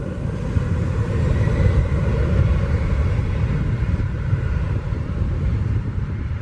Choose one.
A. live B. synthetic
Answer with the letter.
B